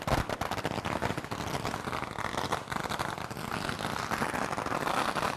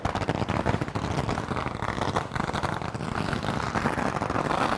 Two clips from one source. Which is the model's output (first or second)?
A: second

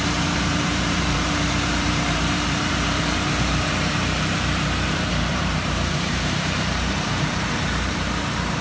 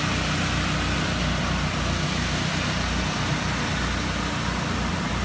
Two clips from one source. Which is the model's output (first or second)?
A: first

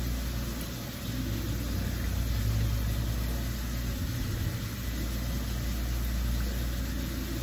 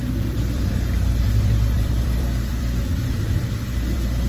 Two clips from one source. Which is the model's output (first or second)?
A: second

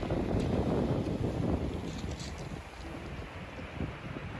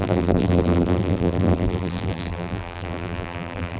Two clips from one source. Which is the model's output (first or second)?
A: second